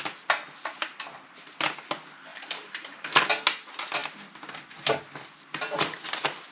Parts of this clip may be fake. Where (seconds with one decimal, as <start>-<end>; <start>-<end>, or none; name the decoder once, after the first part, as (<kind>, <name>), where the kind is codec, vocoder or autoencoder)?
2.3-3.3 (vocoder, BigVGAN v2)